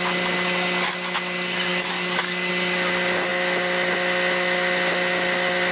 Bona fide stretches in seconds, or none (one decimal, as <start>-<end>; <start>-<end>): 0.0-1.7; 2.5-5.7